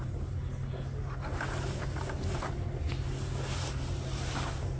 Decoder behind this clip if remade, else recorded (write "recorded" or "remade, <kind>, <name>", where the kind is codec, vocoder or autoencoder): recorded